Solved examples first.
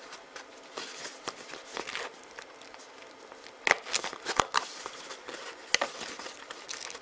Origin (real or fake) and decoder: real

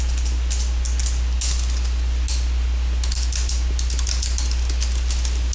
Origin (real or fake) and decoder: real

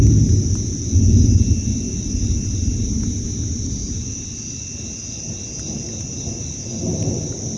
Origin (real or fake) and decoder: real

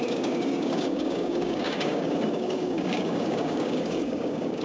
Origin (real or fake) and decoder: fake, codec, DAC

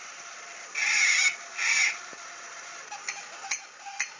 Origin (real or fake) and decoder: real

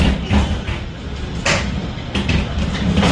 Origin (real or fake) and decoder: real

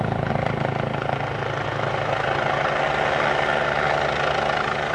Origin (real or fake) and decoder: real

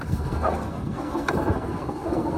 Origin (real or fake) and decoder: fake, codec, SNAC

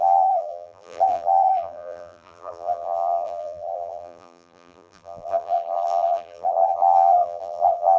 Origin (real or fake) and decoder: fake, vocoder, BigVGAN v2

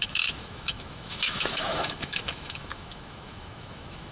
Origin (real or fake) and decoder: fake, autoencoder, DAC-VAE